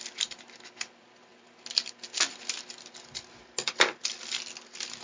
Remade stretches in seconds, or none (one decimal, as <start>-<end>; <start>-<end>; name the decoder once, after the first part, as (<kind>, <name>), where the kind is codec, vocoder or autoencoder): none

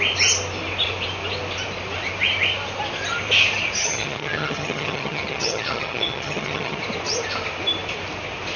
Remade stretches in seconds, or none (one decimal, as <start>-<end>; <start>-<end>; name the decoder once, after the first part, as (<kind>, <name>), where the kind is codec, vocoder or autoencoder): 3.8-6.8 (vocoder, HiFi-GAN)